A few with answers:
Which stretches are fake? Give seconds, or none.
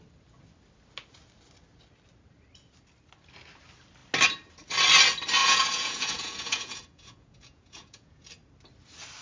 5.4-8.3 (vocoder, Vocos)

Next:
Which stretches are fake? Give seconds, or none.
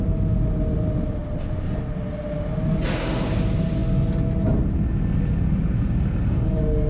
none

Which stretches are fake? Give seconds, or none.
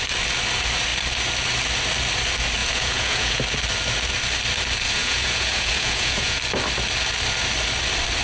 2.6-3.4 (vocoder, Vocos); 5.0-6.4